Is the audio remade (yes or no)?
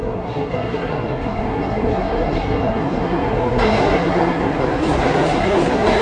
yes